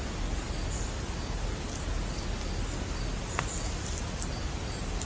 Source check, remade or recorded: recorded